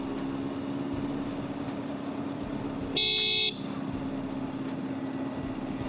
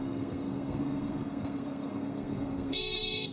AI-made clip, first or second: second